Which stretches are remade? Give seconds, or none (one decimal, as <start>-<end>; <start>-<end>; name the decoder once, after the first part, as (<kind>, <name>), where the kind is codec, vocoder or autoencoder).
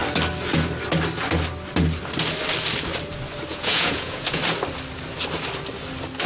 3.5-4.4 (vocoder, Vocos)